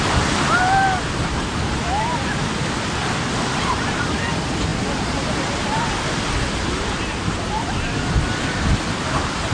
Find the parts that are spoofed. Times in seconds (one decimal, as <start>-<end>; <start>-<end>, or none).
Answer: none